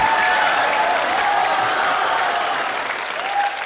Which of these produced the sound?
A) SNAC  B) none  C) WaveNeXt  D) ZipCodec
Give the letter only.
B